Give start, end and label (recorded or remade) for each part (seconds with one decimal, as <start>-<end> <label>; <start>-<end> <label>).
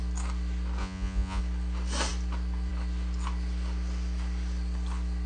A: 0.0-0.8 recorded; 0.8-1.4 remade; 1.4-5.3 recorded